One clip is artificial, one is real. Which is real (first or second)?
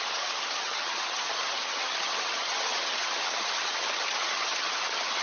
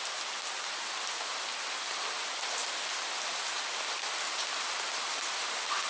second